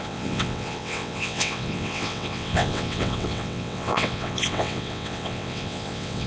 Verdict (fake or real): fake